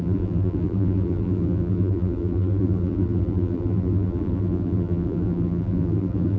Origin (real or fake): fake